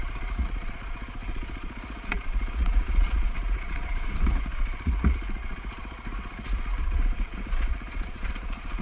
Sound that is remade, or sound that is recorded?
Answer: remade